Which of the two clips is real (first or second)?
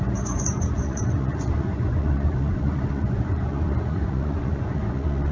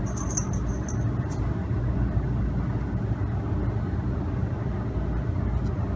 second